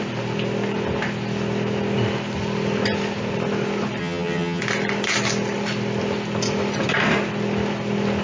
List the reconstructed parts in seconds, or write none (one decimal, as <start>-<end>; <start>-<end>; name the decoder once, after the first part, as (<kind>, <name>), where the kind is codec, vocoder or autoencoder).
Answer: 4.0-4.6 (vocoder, HiFi-GAN)